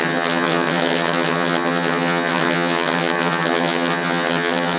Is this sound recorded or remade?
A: remade